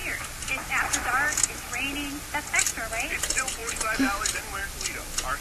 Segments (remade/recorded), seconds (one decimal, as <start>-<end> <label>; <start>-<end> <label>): 0.0-5.4 recorded